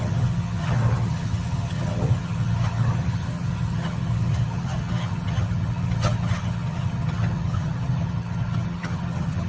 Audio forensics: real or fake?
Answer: fake